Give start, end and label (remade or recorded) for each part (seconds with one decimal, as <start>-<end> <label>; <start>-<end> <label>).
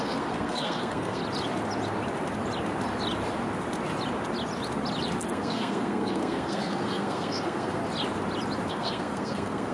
0.0-1.2 remade; 1.2-5.3 recorded; 5.3-7.8 remade; 7.8-8.7 recorded; 8.7-9.7 remade